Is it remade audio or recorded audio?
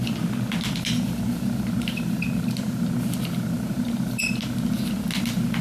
recorded